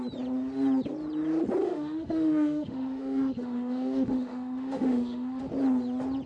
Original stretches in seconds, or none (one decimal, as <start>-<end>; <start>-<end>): 0.0-1.6; 5.4-6.3